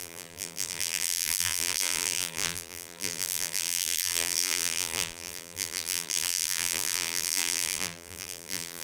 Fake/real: fake